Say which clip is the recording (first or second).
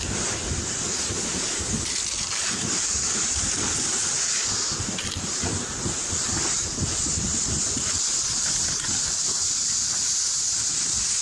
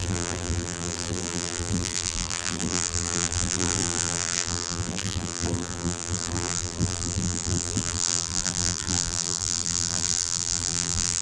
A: first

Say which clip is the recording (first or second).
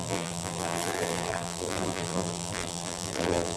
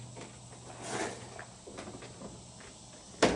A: second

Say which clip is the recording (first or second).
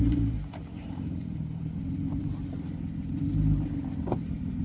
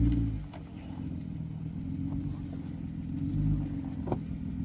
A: second